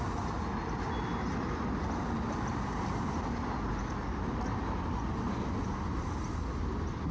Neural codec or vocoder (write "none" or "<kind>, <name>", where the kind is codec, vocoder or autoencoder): none